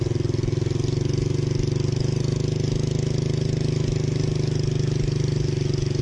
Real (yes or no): yes